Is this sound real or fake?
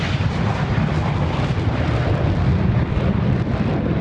fake